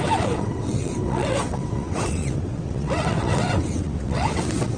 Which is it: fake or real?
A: fake